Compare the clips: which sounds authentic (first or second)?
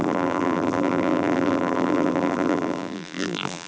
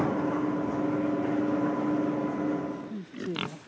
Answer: second